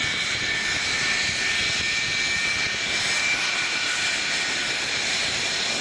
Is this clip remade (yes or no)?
no